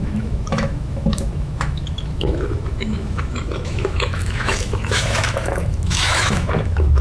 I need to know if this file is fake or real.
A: fake